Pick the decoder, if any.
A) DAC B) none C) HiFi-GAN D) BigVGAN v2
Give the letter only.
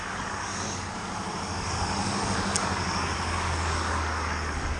A